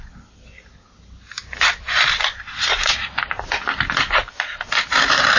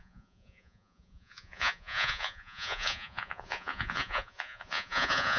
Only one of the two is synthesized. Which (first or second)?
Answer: second